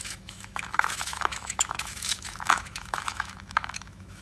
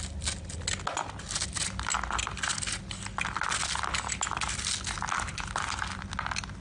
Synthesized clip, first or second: first